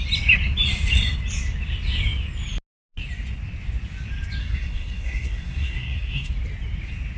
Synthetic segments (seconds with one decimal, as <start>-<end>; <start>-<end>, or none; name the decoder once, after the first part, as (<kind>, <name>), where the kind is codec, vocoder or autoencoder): 4.4-6.3 (codec, SNAC)